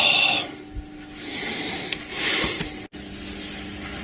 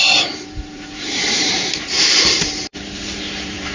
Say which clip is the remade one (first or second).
second